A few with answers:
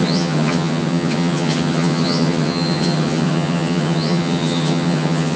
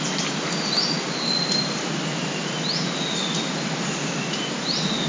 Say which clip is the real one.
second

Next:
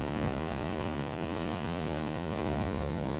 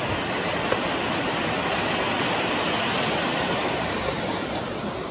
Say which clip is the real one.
second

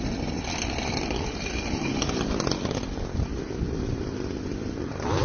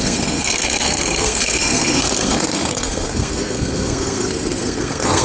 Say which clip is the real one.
first